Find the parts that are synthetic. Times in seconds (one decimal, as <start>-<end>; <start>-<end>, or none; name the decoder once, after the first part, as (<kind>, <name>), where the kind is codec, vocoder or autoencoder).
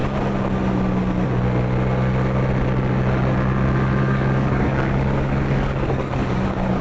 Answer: 4.0-6.8 (codec, DAC)